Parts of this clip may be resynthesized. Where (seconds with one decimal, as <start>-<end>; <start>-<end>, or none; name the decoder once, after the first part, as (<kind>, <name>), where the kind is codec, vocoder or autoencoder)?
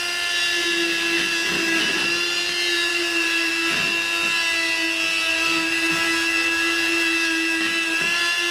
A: 2.9-3.5 (vocoder, BigVGAN v2); 5.3-5.9